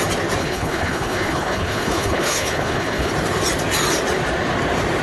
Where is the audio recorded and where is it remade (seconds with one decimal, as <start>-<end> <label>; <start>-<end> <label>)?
0.0-0.4 recorded; 0.4-3.1 remade; 3.1-5.0 recorded